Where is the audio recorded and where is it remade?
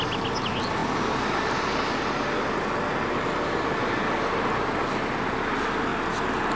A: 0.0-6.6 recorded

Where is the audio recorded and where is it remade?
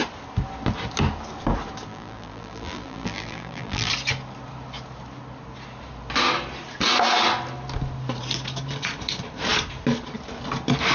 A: 0.0-1.9 recorded; 1.9-3.9 remade; 3.9-10.9 recorded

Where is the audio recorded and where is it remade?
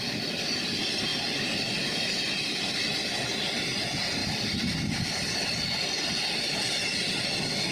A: 0.0-7.7 recorded